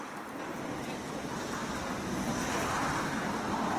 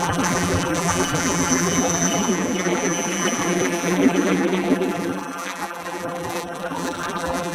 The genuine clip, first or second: first